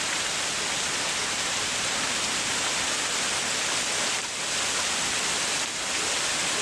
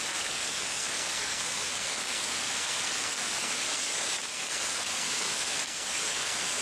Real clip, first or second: first